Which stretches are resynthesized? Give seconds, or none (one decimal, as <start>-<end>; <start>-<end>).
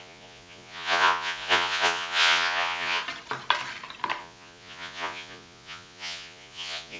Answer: 0.0-3.0; 4.2-7.0